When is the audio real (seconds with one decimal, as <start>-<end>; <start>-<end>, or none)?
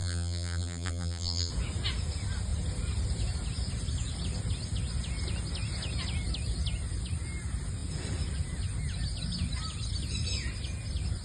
1.5-11.2